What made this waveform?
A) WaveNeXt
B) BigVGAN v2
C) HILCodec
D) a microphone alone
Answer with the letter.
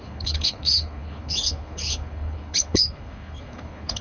C